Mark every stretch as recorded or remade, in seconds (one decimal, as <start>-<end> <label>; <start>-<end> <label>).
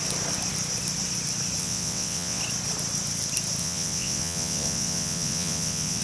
0.0-1.6 recorded; 1.6-2.4 remade; 2.4-3.6 recorded; 3.6-6.0 remade